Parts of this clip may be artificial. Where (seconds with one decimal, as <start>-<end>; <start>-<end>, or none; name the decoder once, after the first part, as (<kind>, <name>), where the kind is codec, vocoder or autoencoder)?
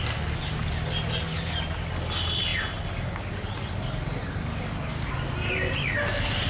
none